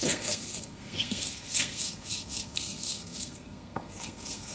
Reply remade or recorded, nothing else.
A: remade